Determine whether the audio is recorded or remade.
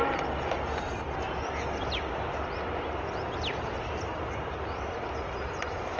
recorded